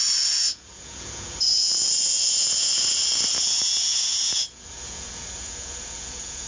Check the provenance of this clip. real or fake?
fake